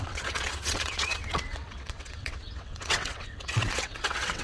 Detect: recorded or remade remade